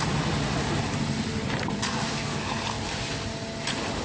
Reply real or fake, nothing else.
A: real